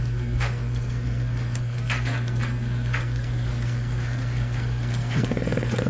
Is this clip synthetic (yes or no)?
yes